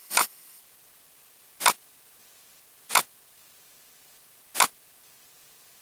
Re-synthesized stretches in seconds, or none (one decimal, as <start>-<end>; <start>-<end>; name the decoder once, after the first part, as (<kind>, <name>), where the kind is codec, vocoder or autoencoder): 0.0-0.6 (autoencoder, DAC-VAE)